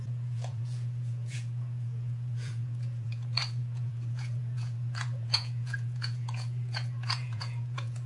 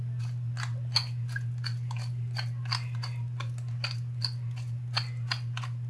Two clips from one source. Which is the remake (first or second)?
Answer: first